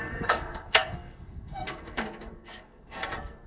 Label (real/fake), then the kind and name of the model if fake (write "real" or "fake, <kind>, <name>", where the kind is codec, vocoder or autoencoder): fake, codec, SNAC